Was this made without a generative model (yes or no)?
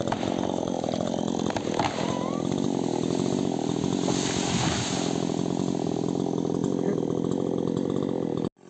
yes